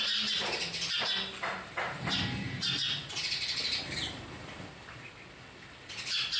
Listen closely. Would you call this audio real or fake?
real